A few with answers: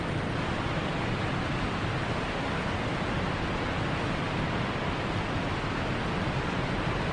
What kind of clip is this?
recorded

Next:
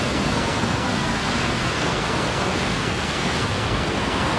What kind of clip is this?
remade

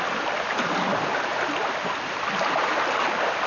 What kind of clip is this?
recorded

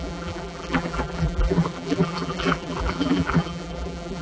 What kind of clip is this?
remade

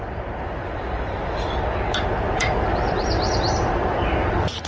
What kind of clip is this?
recorded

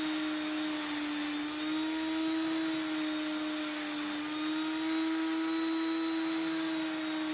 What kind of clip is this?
recorded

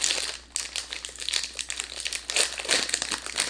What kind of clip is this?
recorded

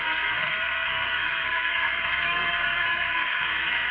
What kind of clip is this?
remade